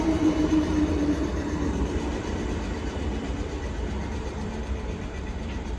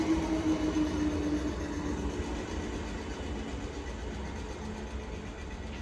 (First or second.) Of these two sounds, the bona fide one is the second